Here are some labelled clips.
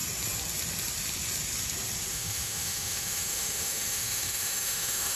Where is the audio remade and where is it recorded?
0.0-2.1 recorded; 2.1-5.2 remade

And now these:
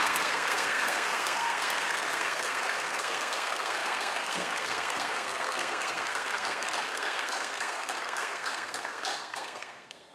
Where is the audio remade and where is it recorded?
0.0-10.1 remade